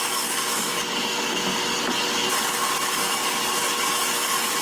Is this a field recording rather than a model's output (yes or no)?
no